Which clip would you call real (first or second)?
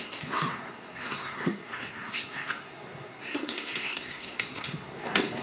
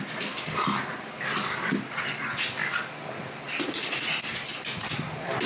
second